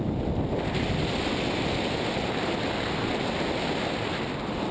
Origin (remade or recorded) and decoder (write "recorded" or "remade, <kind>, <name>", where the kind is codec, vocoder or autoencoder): recorded